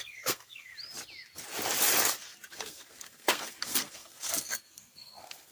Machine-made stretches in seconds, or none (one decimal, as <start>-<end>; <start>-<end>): 0.0-0.7; 2.5-5.5